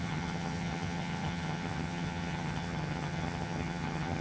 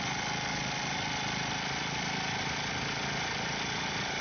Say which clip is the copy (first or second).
first